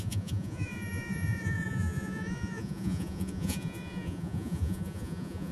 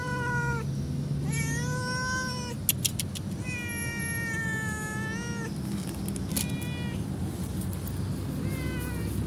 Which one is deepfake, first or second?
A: first